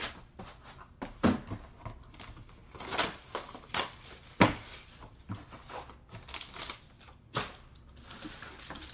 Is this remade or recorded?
recorded